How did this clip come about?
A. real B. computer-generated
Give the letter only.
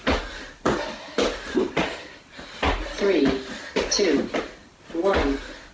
A